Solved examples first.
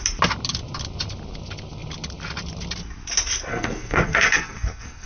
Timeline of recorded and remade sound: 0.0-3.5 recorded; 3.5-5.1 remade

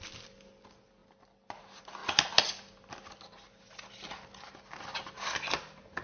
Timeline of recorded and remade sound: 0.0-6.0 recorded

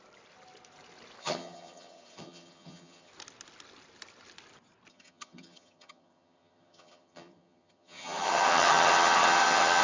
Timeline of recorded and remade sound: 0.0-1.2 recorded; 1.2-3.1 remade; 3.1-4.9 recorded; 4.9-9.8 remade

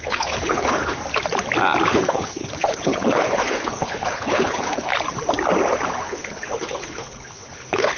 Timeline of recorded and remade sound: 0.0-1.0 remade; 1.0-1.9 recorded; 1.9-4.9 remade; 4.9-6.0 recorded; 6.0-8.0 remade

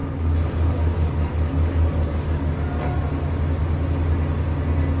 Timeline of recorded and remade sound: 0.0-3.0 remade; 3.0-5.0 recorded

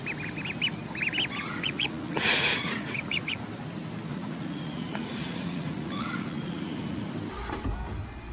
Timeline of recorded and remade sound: 0.0-1.4 recorded; 1.4-3.4 remade; 3.4-4.1 recorded; 4.1-7.0 remade; 7.0-8.3 recorded

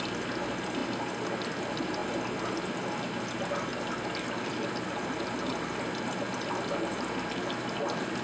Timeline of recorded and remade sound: 0.0-8.2 recorded

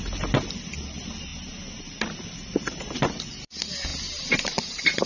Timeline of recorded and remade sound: 0.0-5.1 recorded